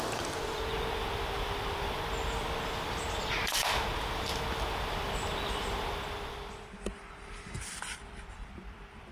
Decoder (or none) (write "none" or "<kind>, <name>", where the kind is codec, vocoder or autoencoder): vocoder, BigVGAN v2